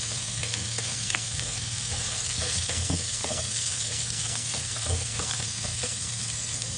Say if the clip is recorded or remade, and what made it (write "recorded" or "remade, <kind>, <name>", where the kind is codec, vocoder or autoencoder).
remade, codec, SNAC